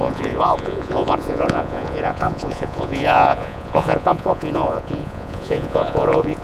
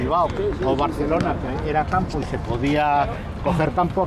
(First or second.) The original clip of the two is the second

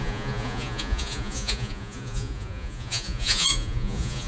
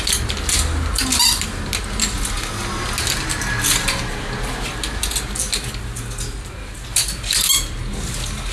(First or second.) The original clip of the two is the second